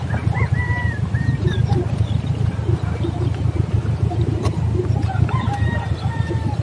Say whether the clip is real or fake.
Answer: real